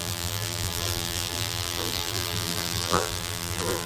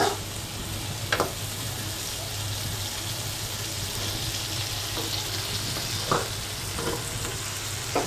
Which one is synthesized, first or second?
first